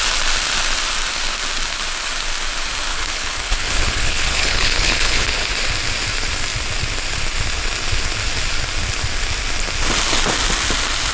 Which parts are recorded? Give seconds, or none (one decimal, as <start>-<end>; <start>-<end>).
0.0-2.9; 5.5-11.1